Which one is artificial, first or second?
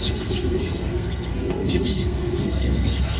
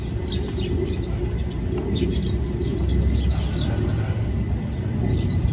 first